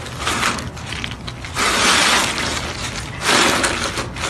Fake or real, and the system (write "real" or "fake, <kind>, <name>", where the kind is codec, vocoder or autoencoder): real